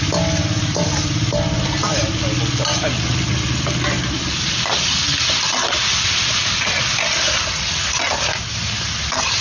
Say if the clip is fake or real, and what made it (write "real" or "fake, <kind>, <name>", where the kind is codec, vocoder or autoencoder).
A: real